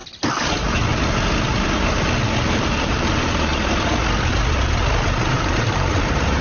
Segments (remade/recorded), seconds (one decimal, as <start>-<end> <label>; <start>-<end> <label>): 0.0-2.5 recorded; 2.5-3.5 remade; 3.5-5.3 recorded; 5.3-6.4 remade